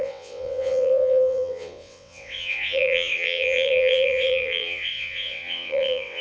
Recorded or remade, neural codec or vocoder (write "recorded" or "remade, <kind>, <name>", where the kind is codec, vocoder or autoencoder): remade, vocoder, WaveNeXt